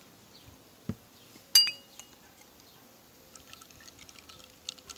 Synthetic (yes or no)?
no